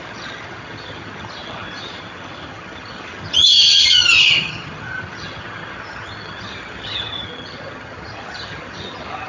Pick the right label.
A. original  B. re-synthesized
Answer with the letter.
B